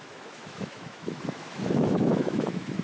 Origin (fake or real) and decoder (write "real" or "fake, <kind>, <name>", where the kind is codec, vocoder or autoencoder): fake, autoencoder, DAC-VAE